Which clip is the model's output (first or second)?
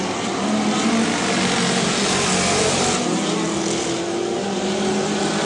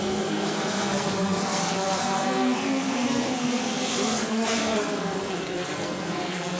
second